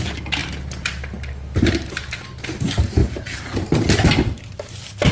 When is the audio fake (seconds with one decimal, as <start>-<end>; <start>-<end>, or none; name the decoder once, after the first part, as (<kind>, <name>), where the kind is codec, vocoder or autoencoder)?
3.0-4.1 (vocoder, BigVGAN v2)